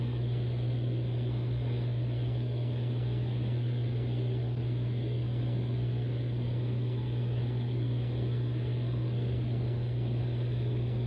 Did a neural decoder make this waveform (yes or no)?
yes